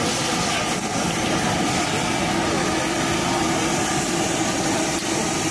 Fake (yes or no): no